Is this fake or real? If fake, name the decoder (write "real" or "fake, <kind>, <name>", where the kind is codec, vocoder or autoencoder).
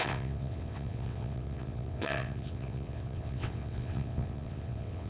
fake, vocoder, WaveNeXt